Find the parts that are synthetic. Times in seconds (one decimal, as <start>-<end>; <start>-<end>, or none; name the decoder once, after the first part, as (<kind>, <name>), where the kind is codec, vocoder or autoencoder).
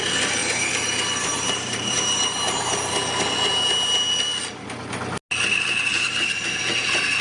0.4-2.9 (vocoder, BigVGAN v2); 5.9-6.6